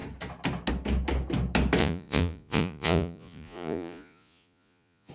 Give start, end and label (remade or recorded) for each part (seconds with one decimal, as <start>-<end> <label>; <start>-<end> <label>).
0.0-1.8 recorded; 1.8-5.1 remade